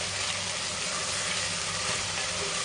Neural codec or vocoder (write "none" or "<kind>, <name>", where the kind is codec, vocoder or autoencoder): none